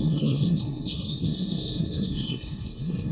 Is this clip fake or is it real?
fake